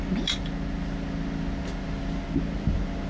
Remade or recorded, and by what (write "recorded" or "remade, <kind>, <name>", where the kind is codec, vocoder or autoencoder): recorded